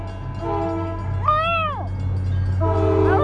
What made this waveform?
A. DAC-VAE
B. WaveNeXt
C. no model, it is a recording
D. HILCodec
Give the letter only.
C